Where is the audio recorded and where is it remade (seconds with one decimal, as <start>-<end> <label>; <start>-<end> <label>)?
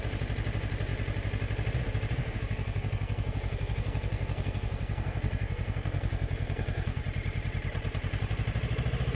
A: 0.0-2.2 recorded; 2.2-7.0 remade; 7.0-9.1 recorded